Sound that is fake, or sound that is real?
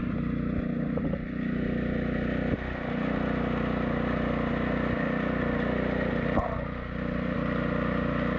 real